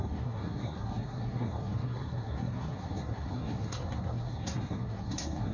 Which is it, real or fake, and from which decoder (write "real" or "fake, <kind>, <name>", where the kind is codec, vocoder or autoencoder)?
fake, codec, SNAC